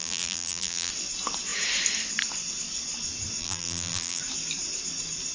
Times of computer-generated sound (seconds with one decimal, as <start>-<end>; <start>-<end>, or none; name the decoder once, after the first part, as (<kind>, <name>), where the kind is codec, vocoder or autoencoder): 0.0-0.9 (vocoder, BigVGAN v2); 3.4-4.2